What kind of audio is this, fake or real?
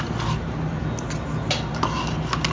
real